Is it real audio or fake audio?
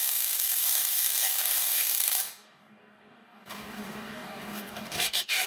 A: fake